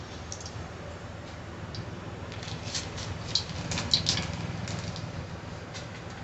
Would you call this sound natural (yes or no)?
yes